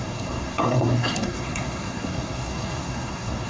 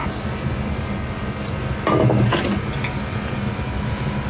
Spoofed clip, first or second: first